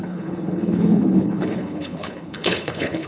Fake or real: fake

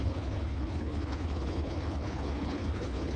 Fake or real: fake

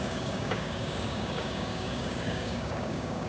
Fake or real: fake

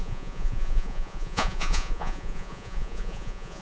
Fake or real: fake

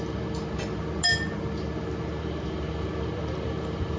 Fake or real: real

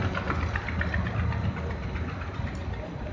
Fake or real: real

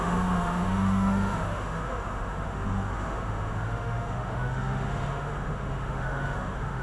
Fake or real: fake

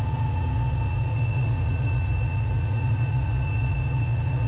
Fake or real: fake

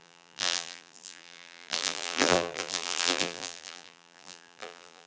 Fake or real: fake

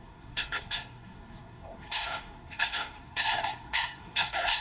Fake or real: fake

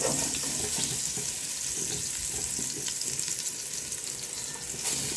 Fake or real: real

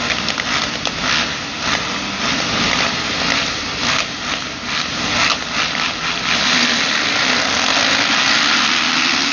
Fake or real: real